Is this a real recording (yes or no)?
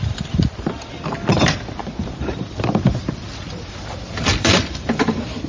no